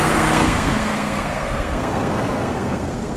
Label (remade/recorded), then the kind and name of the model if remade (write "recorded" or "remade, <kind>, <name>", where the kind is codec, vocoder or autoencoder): remade, codec, SNAC